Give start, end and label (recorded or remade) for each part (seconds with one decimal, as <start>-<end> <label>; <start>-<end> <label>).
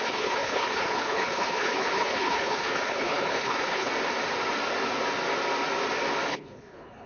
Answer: 0.0-3.9 remade; 3.9-6.3 recorded; 6.3-7.1 remade